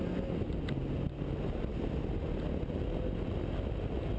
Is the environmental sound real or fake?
real